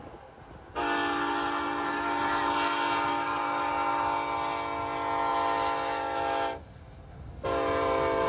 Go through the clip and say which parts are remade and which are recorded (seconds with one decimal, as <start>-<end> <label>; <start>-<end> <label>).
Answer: 0.0-3.1 recorded; 3.1-3.7 remade; 3.7-8.3 recorded

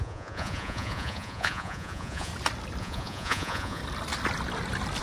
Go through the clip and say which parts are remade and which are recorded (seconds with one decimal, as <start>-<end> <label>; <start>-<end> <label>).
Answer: 0.0-2.3 remade; 2.3-2.8 recorded; 2.8-3.8 remade; 3.8-5.0 recorded

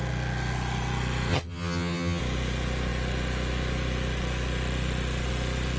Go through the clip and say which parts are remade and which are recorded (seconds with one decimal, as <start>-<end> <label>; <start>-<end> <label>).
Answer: 0.0-1.3 recorded; 1.3-2.2 remade; 2.2-5.8 recorded